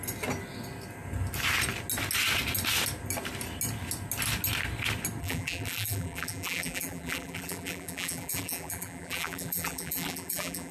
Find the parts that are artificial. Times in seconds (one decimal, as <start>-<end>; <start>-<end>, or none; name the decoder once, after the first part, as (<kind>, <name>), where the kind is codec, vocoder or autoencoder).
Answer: 5.2-10.7 (vocoder, BigVGAN v2)